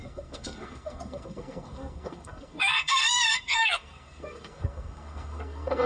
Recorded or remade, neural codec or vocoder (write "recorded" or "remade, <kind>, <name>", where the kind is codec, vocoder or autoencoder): remade, codec, SNAC